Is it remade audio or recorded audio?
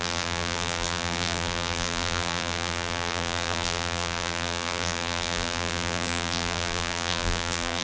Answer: remade